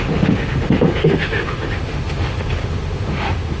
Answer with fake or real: fake